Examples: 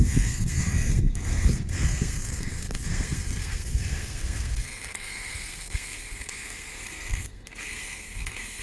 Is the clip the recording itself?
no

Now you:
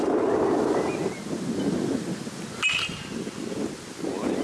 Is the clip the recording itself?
yes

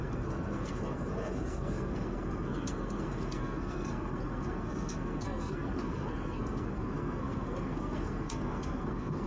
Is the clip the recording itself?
no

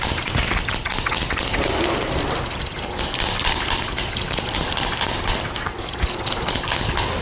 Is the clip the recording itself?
yes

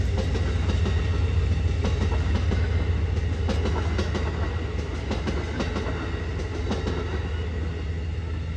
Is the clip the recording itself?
yes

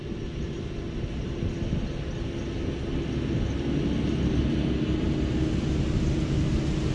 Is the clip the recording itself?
yes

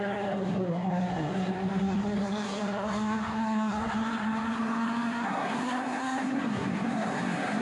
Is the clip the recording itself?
no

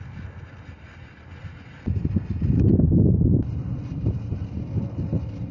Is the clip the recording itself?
yes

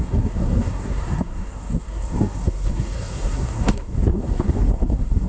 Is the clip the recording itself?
no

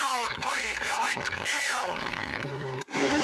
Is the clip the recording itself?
no